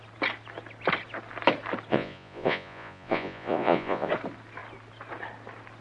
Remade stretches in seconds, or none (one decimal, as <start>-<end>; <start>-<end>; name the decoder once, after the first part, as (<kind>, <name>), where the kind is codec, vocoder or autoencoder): 1.9-4.1 (vocoder, Vocos)